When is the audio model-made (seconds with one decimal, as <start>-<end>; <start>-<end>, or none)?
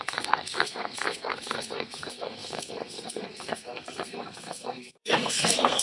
0.0-5.8